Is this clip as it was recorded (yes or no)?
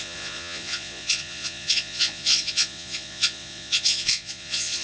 no